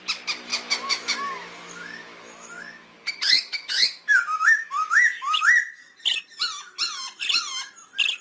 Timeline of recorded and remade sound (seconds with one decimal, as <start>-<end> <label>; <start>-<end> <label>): 0.0-0.5 recorded; 0.5-5.4 remade; 5.4-8.2 recorded